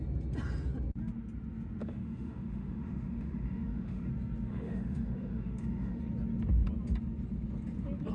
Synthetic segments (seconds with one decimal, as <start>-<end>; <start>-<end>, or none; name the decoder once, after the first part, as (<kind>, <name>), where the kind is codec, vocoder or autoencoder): 1.8-4.1 (autoencoder, DAC-VAE); 4.5-6.0